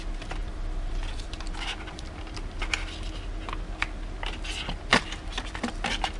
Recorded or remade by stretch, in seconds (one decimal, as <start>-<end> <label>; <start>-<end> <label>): 0.0-0.4 recorded; 0.4-2.6 remade; 2.6-6.2 recorded